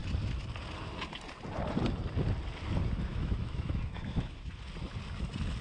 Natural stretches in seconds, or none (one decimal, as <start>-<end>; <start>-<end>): 0.0-3.1; 4.5-5.6